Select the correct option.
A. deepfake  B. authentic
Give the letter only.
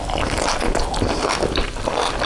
B